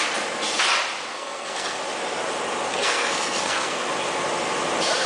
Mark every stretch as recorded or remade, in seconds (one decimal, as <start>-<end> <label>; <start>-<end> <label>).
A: 0.0-1.1 recorded; 1.1-1.8 remade; 1.8-2.7 recorded; 2.7-3.9 remade; 3.9-5.1 recorded